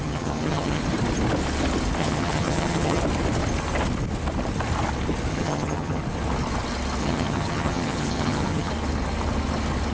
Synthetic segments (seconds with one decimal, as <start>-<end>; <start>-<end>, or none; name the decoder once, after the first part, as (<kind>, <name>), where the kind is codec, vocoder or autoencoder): 0.0-0.8 (vocoder, HiFi-GAN); 2.0-3.0; 5.3-6.0; 7.0-8.7